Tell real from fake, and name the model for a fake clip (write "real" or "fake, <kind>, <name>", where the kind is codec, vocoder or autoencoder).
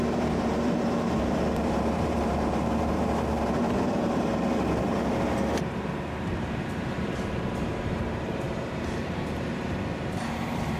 fake, vocoder, BigVGAN v2